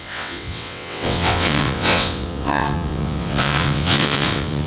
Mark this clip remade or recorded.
remade